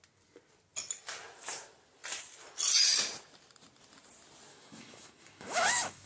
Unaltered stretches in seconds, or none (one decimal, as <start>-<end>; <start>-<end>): 0.0-4.5